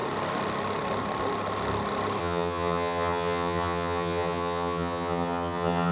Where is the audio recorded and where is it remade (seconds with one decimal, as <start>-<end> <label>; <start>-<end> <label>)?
0.0-2.2 recorded; 2.2-5.9 remade